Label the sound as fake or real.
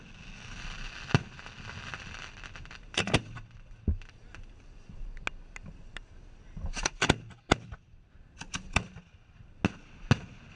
real